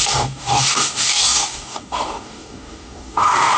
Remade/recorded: remade